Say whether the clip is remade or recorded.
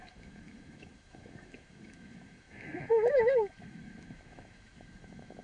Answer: remade